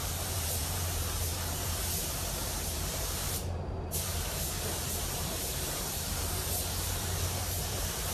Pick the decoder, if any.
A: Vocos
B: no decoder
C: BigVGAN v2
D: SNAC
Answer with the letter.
C